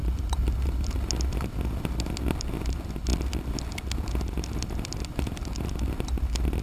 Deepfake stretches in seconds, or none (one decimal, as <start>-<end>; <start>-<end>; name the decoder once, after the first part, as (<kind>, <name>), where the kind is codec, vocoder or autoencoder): none